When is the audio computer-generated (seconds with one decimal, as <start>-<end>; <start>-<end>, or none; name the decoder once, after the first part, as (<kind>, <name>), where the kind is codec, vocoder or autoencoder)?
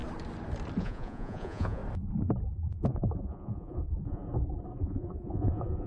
0.8-1.8 (vocoder, Vocos); 2.8-4.2; 4.8-5.9